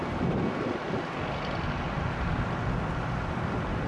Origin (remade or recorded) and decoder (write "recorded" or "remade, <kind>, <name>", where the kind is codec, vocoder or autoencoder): recorded